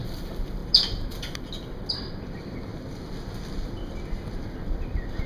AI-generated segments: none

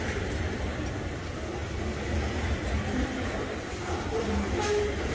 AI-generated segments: none